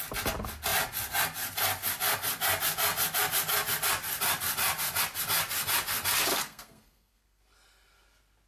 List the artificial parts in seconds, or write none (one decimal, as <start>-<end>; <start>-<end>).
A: 6.3-7.4